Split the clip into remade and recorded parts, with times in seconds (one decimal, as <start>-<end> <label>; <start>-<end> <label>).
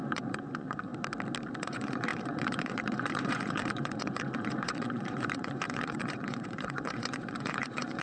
0.0-0.9 remade; 0.9-1.6 recorded; 1.6-8.0 remade